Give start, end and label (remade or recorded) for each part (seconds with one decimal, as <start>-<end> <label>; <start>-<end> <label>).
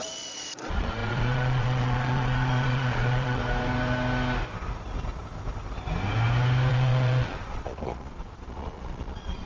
0.0-3.4 remade; 3.4-6.7 recorded; 6.7-9.5 remade